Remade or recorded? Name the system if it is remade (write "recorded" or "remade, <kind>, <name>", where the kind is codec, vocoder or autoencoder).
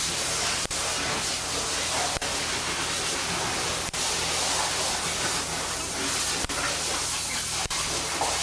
recorded